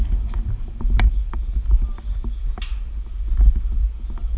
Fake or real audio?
real